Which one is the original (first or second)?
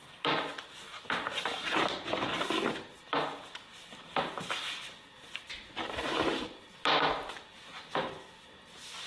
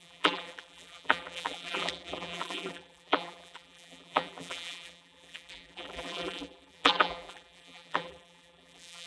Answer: first